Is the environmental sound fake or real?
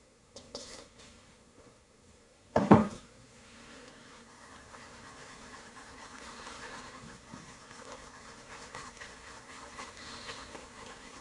fake